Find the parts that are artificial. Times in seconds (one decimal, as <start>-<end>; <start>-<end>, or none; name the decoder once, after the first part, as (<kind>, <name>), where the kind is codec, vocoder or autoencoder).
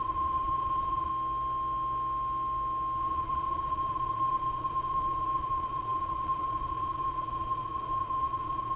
0.0-1.1 (vocoder, Vocos); 3.0-8.8